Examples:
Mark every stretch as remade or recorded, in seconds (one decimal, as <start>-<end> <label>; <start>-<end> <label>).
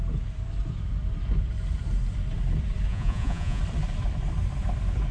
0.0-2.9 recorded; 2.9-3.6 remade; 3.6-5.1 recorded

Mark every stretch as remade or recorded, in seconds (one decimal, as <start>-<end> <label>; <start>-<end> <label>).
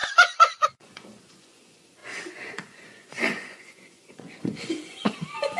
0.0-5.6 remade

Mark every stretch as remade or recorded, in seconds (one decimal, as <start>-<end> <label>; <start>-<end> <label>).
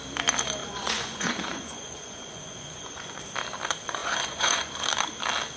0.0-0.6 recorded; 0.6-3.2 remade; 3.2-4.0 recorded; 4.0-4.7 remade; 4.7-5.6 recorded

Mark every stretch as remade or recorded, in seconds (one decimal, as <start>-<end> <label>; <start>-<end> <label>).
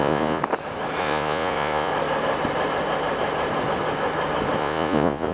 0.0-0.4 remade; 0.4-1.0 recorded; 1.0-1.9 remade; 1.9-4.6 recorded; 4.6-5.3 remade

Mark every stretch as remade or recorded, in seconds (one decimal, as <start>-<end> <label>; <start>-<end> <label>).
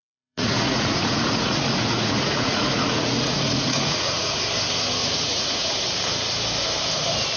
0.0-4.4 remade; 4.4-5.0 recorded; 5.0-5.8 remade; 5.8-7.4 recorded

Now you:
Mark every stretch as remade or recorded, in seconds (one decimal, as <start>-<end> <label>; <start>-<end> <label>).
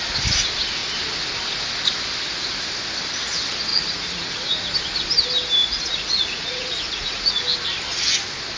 0.0-3.7 recorded; 3.7-4.4 remade; 4.4-5.6 recorded; 5.6-7.4 remade; 7.4-8.6 recorded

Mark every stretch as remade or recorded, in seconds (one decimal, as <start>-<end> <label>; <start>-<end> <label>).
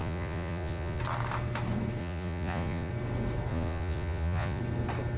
0.0-1.0 remade; 1.0-2.0 recorded; 2.0-2.9 remade; 2.9-3.5 recorded; 3.5-4.6 remade; 4.6-5.2 recorded